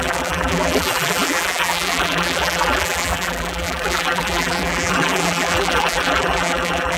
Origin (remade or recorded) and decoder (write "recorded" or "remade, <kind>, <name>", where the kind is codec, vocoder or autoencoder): remade, vocoder, BigVGAN v2